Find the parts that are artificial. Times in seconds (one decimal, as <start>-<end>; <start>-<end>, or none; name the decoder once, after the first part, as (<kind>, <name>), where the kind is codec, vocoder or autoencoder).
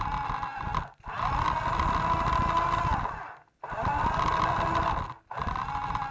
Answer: none